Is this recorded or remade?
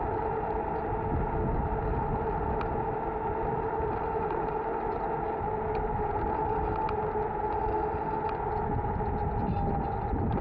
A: recorded